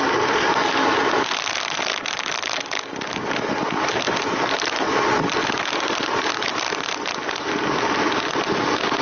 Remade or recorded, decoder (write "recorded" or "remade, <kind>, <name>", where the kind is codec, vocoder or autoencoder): recorded